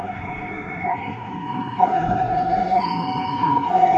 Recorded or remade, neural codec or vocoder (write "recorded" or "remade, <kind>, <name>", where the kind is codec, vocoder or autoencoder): remade, codec, SNAC